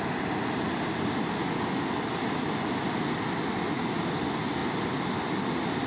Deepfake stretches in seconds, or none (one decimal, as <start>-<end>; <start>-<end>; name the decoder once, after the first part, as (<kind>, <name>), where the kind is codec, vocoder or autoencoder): none